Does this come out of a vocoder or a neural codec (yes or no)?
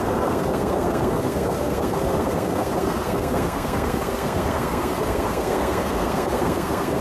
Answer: yes